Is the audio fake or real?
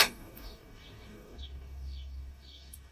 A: fake